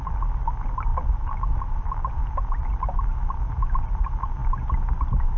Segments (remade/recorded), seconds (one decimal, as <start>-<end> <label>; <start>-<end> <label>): 0.0-5.4 recorded

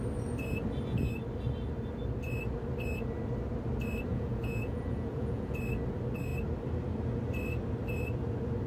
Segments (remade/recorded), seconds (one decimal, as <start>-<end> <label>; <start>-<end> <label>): 0.0-4.1 recorded; 4.1-5.6 remade; 5.6-8.7 recorded

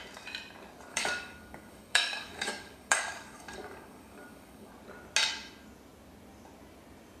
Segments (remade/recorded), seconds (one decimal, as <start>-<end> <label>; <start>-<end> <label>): 0.0-0.9 recorded; 0.9-4.7 remade; 4.7-7.2 recorded

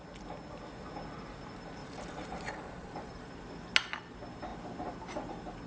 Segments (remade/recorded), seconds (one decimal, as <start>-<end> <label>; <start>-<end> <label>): 0.0-1.8 recorded; 1.8-3.3 remade; 3.3-5.7 recorded

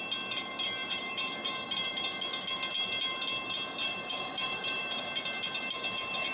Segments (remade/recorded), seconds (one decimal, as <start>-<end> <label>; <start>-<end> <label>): 0.0-0.8 recorded; 0.8-2.0 remade; 2.0-3.8 recorded; 3.8-5.0 remade; 5.0-6.3 recorded

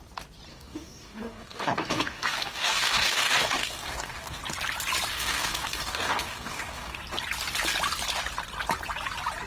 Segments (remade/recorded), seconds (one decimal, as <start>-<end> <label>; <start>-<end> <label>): 0.0-0.5 recorded; 0.5-4.4 remade; 4.4-5.1 recorded; 5.1-7.0 remade; 7.0-9.5 recorded

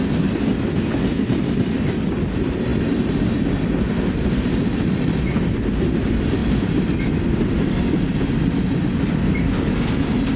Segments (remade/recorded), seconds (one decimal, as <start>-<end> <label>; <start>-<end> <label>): 0.0-10.4 recorded

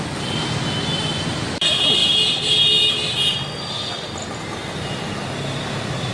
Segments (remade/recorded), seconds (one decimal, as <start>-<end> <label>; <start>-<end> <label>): 0.0-6.1 recorded